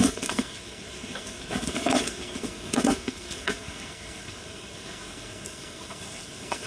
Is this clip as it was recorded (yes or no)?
no